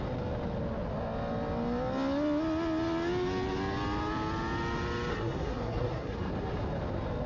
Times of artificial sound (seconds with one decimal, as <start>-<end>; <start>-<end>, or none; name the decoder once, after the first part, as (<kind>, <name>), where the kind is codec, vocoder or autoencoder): 5.1-6.3 (codec, SNAC)